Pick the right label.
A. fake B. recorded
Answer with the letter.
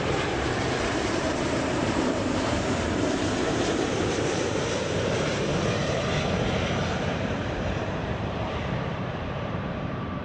A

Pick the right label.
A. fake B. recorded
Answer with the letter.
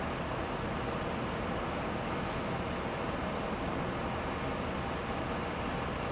B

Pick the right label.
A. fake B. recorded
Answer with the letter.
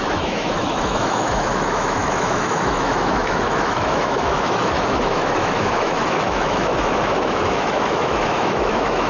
A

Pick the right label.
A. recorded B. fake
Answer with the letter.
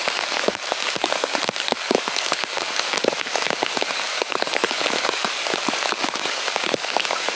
B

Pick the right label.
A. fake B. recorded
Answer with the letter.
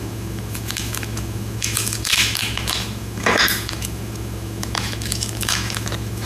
A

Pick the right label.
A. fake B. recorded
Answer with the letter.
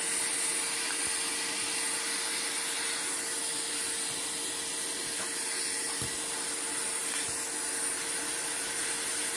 B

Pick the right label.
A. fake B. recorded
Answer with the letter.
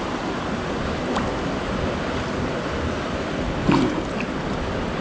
B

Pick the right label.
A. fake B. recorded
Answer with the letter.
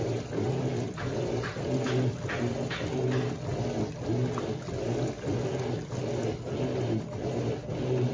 B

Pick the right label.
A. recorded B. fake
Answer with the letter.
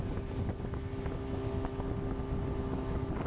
A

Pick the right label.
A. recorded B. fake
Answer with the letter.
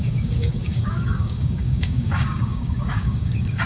B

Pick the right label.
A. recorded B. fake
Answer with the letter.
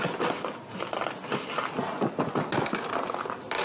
A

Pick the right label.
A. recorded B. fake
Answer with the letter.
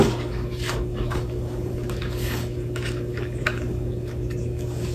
B